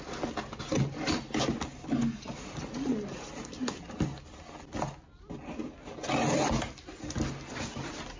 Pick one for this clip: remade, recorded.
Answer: recorded